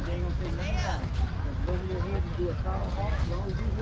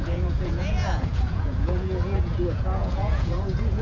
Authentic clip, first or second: first